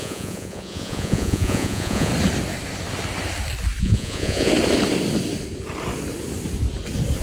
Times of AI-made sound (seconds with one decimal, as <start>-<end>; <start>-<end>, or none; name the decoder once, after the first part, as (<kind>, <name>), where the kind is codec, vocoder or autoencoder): 0.0-2.1 (vocoder, Vocos); 3.8-4.5